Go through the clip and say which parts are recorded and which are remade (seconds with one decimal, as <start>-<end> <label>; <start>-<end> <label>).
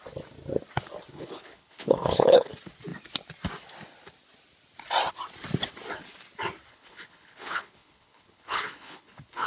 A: 0.0-1.1 recorded; 1.1-2.5 remade; 2.5-6.7 recorded; 6.7-9.5 remade